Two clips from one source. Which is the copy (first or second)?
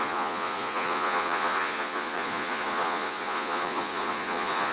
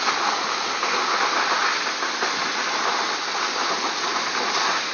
first